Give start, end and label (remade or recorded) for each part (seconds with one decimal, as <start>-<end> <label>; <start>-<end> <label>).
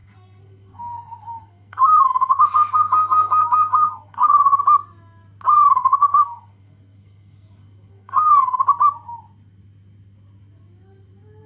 0.0-4.6 remade; 4.6-5.8 recorded; 5.8-8.6 remade; 8.6-11.5 recorded